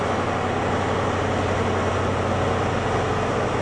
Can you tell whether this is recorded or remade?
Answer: recorded